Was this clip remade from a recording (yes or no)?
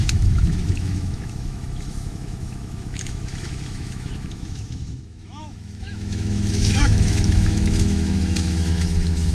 yes